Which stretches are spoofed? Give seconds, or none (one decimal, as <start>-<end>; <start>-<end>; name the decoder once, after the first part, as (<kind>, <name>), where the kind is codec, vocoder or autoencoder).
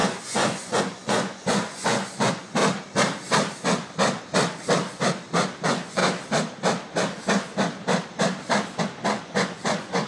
0.0-2.6 (vocoder, Vocos); 5.6-6.0; 8.8-10.1